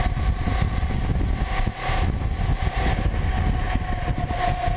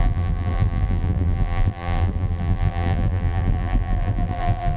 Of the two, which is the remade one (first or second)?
second